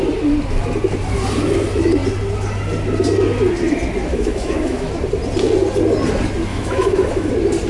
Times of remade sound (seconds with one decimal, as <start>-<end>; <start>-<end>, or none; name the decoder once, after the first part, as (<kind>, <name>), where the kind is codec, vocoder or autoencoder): 4.1-4.9 (autoencoder, DAC-VAE); 6.5-7.3